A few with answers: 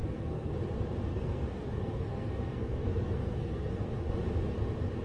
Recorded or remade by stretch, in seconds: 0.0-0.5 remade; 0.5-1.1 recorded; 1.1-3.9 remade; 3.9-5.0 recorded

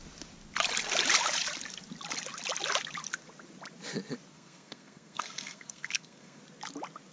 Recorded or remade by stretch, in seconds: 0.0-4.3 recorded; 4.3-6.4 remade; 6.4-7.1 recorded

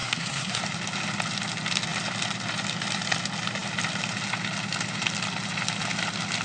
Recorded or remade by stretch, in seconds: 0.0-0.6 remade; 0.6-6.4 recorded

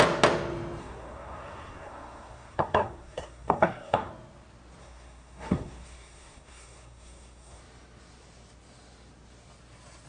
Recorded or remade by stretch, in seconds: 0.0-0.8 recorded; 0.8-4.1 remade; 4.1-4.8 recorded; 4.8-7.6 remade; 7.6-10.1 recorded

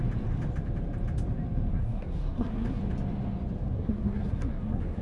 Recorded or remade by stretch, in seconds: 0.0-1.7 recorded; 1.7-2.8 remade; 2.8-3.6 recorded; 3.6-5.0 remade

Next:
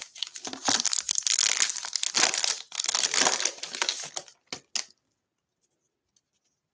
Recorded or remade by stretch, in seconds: 0.0-6.7 recorded

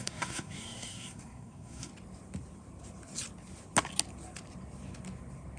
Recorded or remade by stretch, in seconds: 0.0-1.9 remade; 1.9-5.6 recorded

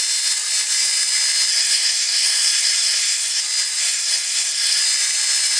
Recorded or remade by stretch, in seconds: 0.0-1.5 recorded; 1.5-3.4 remade; 3.4-3.8 recorded; 3.8-4.8 remade; 4.8-5.6 recorded